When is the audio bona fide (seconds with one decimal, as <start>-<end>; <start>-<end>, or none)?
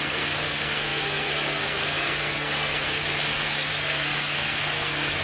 none